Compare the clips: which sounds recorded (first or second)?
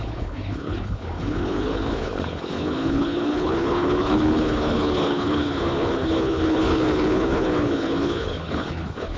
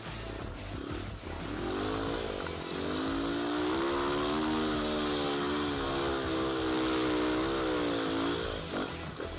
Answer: second